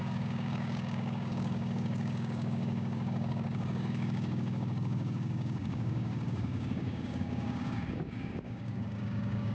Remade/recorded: remade